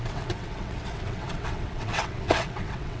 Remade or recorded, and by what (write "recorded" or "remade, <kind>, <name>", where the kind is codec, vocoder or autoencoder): remade, vocoder, WaveNeXt